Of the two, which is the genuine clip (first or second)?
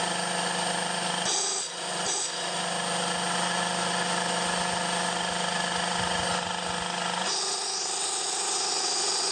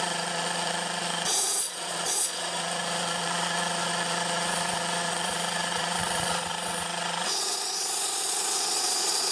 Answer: first